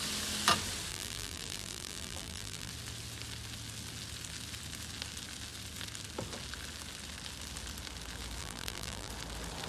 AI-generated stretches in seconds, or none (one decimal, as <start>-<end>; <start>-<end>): 0.9-2.7; 8.4-9.1